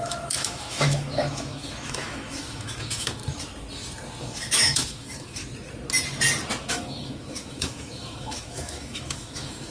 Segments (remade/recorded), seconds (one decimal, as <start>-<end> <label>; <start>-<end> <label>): 0.0-3.2 remade; 3.2-4.2 recorded; 4.2-5.4 remade; 5.4-6.6 recorded; 6.6-9.7 remade